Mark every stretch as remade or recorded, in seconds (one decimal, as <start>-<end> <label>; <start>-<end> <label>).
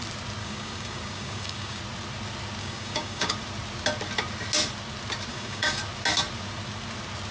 0.0-0.4 recorded; 0.4-1.8 remade; 1.8-2.6 recorded; 2.6-3.3 remade; 3.3-5.3 recorded; 5.3-5.8 remade; 5.8-7.3 recorded